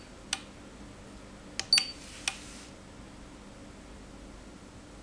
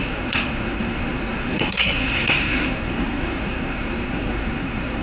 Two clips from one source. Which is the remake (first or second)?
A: second